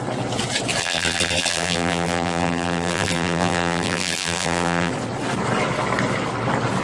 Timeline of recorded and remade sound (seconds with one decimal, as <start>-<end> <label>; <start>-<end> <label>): 0.0-0.8 recorded; 0.8-4.9 remade; 4.9-6.8 recorded

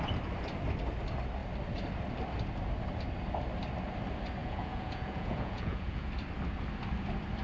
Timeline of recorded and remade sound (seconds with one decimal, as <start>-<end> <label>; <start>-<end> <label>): 0.0-4.4 recorded; 4.4-6.1 remade; 6.1-7.4 recorded

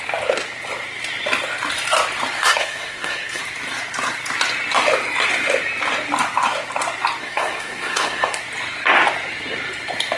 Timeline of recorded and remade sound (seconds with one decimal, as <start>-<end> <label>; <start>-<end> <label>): 0.0-2.4 recorded; 2.4-3.4 remade; 3.4-7.2 recorded; 7.2-8.4 remade; 8.4-10.2 recorded